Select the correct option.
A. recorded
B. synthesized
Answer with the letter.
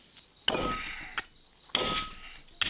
A